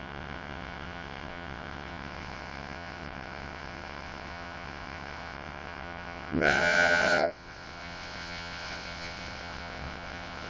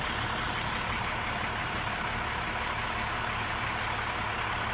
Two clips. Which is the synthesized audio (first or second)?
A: first